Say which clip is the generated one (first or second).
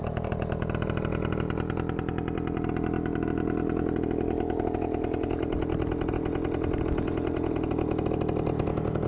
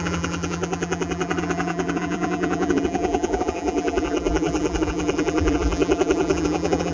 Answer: second